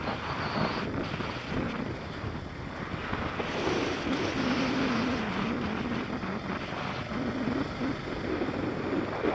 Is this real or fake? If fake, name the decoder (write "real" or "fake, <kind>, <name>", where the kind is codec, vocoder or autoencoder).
real